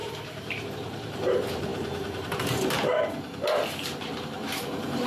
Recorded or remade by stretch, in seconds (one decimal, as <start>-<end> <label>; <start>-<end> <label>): 0.0-5.1 remade